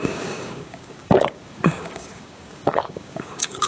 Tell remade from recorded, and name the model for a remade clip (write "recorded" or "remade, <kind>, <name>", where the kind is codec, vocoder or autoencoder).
remade, codec, DAC